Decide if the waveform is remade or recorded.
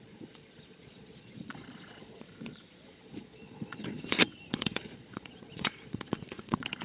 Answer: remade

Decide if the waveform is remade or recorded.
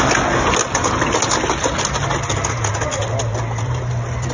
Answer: recorded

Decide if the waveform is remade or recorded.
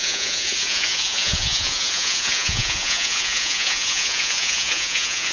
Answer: remade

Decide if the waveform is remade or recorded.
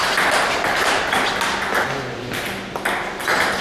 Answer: recorded